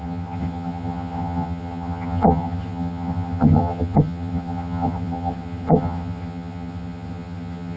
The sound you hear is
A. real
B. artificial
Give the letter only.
B